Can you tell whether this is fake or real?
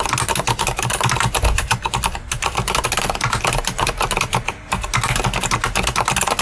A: real